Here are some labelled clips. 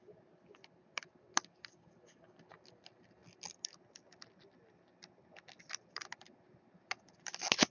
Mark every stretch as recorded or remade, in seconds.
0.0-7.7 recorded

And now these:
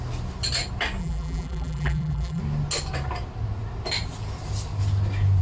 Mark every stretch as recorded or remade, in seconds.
0.0-1.0 recorded; 1.0-2.4 remade; 2.4-5.4 recorded

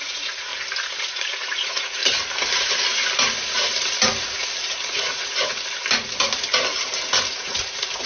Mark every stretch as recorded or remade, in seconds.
0.0-0.5 remade; 0.5-1.0 recorded; 1.0-2.0 remade; 2.0-4.2 recorded; 4.2-5.5 remade; 5.5-7.3 recorded; 7.3-8.1 remade

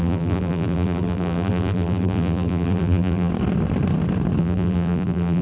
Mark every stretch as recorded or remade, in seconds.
0.0-3.3 remade; 3.3-4.4 recorded; 4.4-5.4 remade

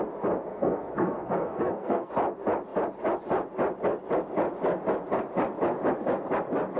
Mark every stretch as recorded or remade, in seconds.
0.0-0.5 recorded; 0.5-2.1 remade; 2.1-6.8 recorded